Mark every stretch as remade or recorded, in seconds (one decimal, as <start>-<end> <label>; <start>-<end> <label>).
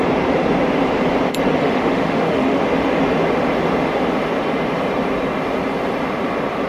0.0-1.6 recorded; 1.6-2.6 remade; 2.6-6.7 recorded